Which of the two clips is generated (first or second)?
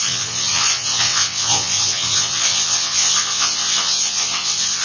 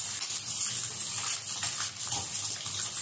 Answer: first